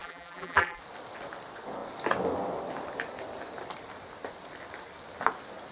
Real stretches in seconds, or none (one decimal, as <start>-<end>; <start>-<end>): 0.8-5.7